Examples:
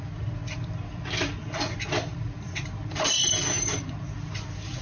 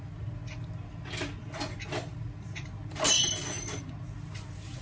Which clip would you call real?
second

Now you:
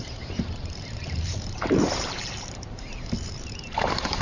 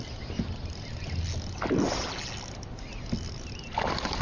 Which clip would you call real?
second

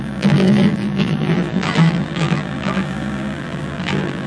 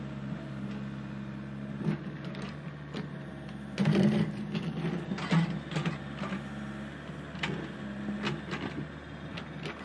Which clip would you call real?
second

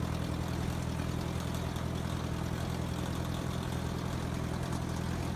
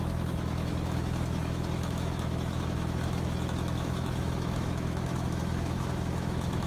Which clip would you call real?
first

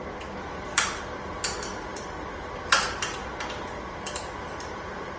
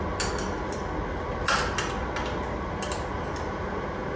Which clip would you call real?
second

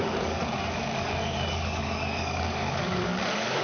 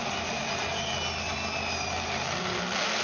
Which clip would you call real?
second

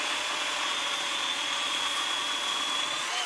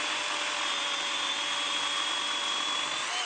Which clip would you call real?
second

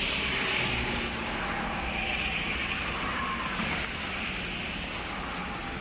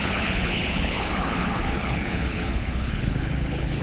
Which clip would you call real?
first